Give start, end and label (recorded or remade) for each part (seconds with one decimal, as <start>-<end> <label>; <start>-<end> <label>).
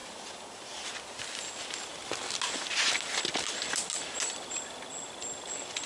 0.0-0.9 remade; 0.9-5.9 recorded